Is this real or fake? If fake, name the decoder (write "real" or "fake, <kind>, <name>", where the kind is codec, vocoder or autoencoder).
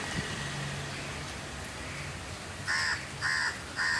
real